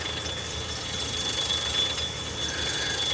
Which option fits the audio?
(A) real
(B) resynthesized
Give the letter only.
A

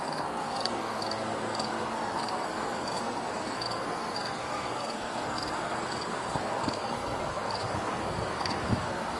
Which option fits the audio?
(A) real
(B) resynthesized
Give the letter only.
B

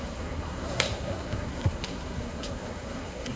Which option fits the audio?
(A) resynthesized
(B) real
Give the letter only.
A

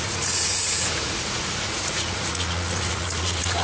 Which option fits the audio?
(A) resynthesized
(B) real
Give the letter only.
A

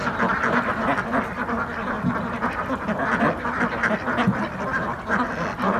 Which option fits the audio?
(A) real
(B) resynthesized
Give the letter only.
A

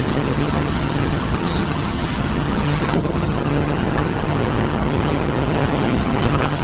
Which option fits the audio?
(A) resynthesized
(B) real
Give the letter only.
A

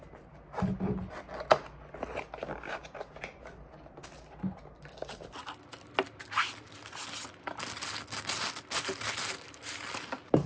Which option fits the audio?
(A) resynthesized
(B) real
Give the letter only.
B